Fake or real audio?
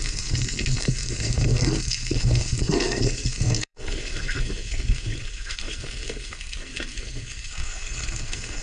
fake